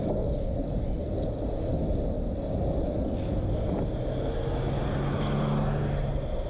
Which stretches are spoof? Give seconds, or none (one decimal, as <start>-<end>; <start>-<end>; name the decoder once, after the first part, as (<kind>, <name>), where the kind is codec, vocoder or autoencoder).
none